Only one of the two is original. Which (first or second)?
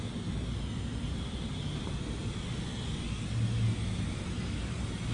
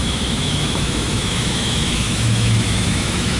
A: first